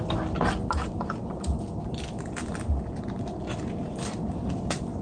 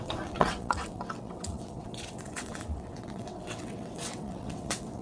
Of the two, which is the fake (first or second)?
second